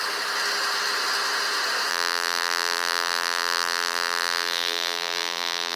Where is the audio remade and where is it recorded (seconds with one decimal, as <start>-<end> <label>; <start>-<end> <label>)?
0.0-1.9 recorded; 1.9-5.8 remade